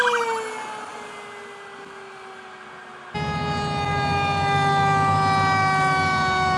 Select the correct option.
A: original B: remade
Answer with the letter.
A